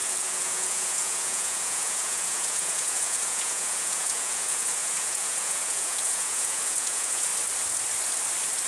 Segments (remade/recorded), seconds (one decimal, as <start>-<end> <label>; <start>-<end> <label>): 0.0-7.3 remade; 7.3-8.7 recorded